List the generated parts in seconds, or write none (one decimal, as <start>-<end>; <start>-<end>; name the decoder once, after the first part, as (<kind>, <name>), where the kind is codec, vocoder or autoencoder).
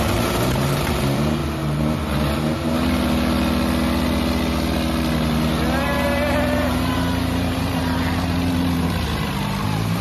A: 0.0-1.4 (vocoder, BigVGAN v2); 5.8-10.0